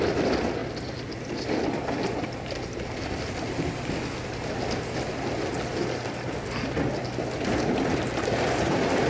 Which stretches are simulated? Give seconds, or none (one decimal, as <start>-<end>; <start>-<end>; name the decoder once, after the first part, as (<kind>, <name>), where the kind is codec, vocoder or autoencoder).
none